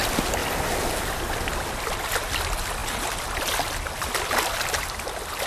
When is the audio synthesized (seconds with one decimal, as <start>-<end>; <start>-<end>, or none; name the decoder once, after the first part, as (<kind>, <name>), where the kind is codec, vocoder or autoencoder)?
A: none